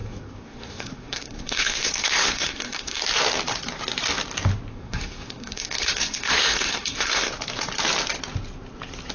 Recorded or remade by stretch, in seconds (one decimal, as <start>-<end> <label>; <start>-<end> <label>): 0.0-3.0 remade; 3.0-4.7 recorded; 4.7-7.3 remade; 7.3-9.1 recorded

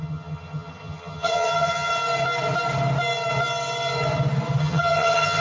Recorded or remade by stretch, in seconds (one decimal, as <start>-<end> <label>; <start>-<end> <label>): 0.0-1.9 remade; 1.9-4.6 recorded; 4.6-5.4 remade

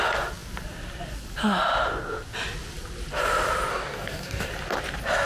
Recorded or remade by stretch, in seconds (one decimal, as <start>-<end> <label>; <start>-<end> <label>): 0.0-3.7 recorded; 3.7-4.5 remade; 4.5-5.3 recorded

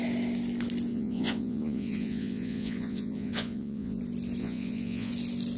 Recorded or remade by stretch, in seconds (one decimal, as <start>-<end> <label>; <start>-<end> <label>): 0.0-0.9 recorded; 0.9-4.0 remade; 4.0-4.4 recorded; 4.4-5.1 remade; 5.1-5.6 recorded

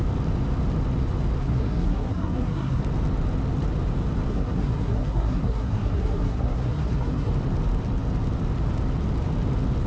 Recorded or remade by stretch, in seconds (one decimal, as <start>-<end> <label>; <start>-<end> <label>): 0.0-1.4 recorded; 1.4-2.8 remade; 2.8-4.3 recorded; 4.3-7.3 remade; 7.3-9.9 recorded

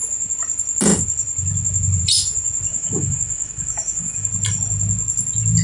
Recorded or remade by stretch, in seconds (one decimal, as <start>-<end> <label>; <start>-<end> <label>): 0.0-2.7 recorded; 2.7-4.3 remade; 4.3-5.6 recorded